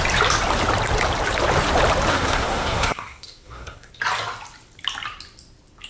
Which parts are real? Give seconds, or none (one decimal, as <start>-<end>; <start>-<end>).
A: 0.0-2.1; 3.9-5.9